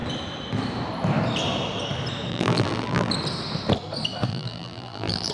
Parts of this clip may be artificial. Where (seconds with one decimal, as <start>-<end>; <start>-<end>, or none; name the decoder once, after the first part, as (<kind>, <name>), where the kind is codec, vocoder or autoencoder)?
2.3-3.1 (vocoder, BigVGAN v2); 4.3-5.3